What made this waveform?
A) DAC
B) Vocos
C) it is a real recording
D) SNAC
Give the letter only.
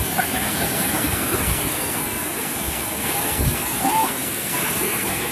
D